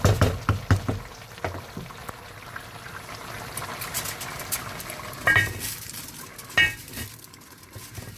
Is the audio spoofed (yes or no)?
no